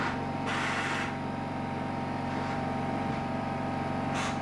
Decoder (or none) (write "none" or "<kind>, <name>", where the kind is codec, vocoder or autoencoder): vocoder, BigVGAN v2